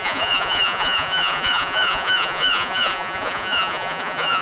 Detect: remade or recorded remade